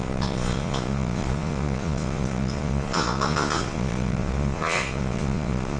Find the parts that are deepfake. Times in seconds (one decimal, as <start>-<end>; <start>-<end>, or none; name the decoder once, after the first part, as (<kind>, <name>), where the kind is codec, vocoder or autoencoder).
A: 0.0-5.8 (vocoder, Vocos)